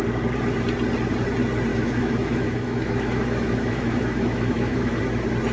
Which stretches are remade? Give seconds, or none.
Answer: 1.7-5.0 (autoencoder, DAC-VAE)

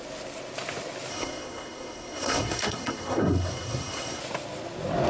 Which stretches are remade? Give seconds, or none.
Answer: 1.1-4.2 (codec, SNAC)

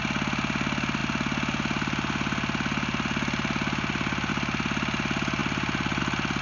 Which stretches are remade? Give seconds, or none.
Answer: none